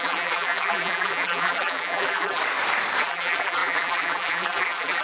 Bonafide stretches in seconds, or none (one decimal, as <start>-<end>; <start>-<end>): 2.4-3.0